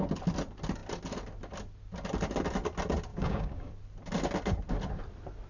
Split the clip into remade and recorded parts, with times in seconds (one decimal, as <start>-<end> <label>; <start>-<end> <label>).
0.0-3.1 recorded; 3.1-3.7 remade; 3.7-5.5 recorded